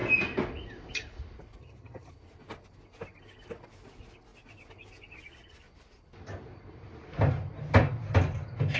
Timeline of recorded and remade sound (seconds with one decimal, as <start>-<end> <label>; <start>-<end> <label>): 0.0-1.6 recorded; 1.6-2.1 remade; 2.1-8.8 recorded